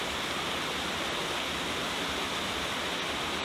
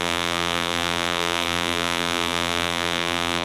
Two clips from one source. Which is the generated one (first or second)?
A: second